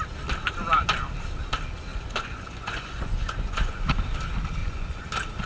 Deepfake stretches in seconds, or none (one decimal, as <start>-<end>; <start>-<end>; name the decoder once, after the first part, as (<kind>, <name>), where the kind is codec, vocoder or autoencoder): 1.9-3.9 (vocoder, Vocos); 4.6-5.1

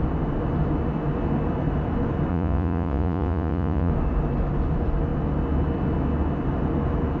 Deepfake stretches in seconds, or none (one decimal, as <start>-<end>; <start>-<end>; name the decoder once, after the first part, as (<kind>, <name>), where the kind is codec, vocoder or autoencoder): 2.3-3.9 (vocoder, Vocos)

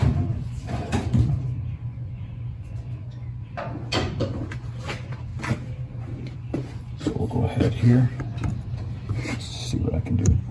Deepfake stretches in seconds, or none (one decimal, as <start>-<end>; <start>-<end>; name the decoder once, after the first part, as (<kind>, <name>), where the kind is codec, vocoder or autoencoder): 0.0-5.3 (vocoder, Vocos); 6.0-8.3; 9.1-10.5

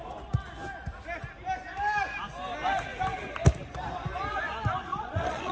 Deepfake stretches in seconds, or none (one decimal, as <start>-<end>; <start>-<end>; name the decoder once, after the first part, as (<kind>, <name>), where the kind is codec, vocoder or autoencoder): 4.9-5.5 (vocoder, Vocos)